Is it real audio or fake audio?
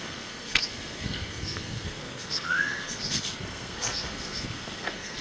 fake